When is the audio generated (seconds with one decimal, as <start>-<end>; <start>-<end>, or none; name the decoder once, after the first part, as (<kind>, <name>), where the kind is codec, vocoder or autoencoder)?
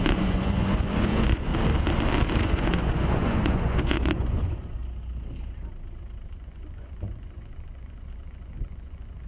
0.0-1.5 (vocoder, Vocos); 2.4-4.8; 6.3-9.3